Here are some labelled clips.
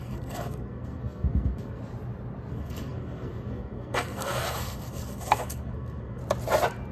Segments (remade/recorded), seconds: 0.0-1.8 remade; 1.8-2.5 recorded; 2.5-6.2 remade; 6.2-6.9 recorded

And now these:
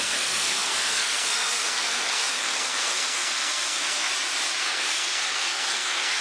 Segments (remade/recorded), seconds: 0.0-4.1 remade; 4.1-4.6 recorded; 4.6-6.2 remade